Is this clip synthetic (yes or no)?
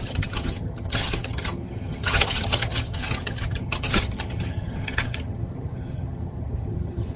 yes